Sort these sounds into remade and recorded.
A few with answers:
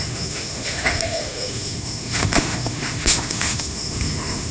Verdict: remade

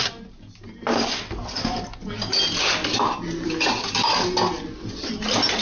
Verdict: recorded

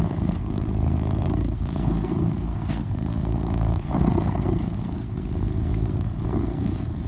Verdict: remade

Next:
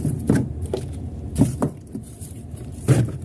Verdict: remade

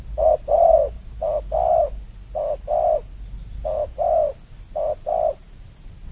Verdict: recorded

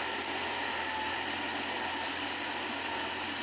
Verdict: recorded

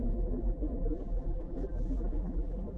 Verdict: remade